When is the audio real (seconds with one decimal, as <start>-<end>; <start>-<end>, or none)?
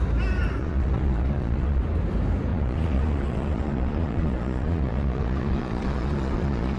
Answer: 0.0-0.6; 1.8-2.5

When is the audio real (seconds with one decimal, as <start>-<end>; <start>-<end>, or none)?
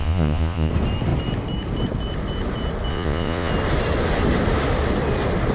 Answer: 0.7-2.9; 3.5-5.5